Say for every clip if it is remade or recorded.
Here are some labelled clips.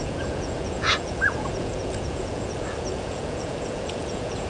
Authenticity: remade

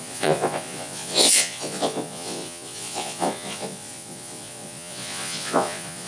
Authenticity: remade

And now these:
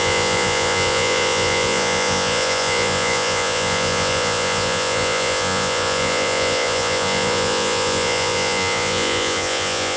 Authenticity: remade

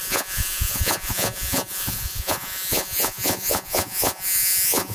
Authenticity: remade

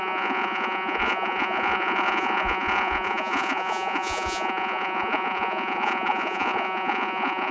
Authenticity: remade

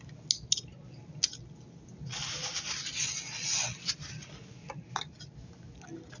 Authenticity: recorded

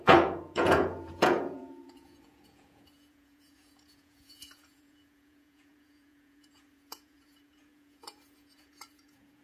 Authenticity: remade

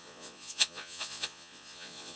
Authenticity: remade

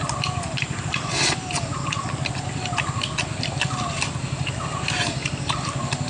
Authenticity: recorded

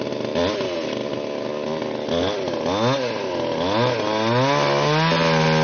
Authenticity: recorded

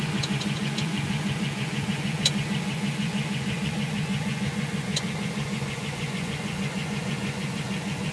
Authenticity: remade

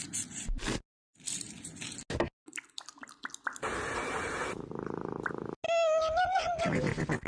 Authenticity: recorded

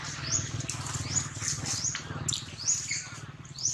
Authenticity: recorded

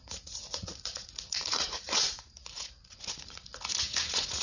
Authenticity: remade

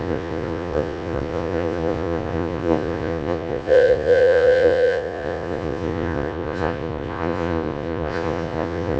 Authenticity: remade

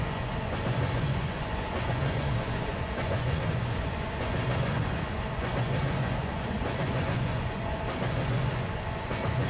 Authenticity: remade